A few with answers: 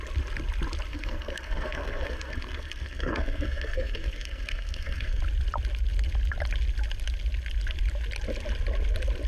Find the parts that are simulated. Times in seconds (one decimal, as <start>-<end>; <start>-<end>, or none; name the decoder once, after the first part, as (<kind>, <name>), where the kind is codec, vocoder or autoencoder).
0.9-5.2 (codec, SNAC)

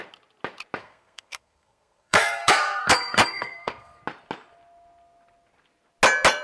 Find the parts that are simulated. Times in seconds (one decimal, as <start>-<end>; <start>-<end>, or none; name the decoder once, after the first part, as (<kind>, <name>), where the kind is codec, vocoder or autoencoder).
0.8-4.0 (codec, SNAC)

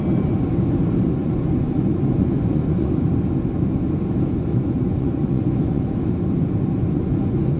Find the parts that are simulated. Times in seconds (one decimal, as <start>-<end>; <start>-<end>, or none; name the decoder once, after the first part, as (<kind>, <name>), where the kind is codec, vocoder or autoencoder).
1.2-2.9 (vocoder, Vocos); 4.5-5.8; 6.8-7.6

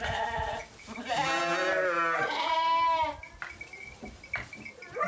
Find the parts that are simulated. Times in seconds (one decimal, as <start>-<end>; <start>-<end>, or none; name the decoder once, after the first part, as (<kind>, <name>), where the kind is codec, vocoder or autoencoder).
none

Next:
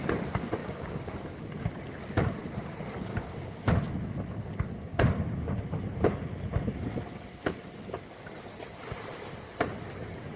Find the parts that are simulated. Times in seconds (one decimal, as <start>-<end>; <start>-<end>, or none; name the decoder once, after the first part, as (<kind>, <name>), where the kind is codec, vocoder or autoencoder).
0.6-1.2 (codec, DAC); 3.1-3.6

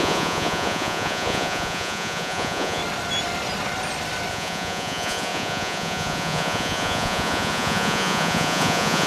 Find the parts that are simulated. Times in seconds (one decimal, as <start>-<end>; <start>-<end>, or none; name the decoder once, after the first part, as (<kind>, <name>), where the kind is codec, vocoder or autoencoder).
0.0-2.8 (vocoder, Vocos); 4.3-9.1

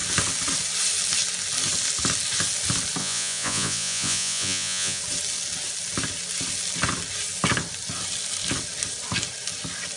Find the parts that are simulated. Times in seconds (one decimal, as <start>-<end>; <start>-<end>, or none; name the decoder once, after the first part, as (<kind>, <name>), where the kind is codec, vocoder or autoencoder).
3.0-5.0 (vocoder, Vocos)

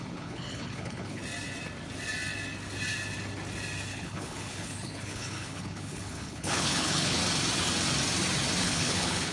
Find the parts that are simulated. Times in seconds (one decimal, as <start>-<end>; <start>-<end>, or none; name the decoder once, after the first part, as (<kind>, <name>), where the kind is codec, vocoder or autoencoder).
0.0-1.2 (codec, HILCodec); 3.9-7.2; 8.6-9.3